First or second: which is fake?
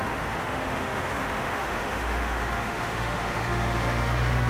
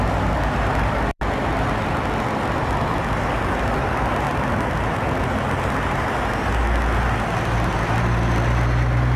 first